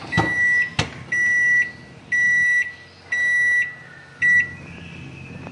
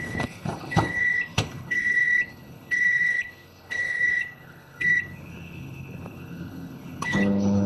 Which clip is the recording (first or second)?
first